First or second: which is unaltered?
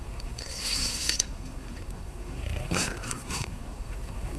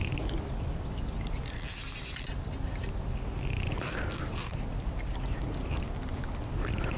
second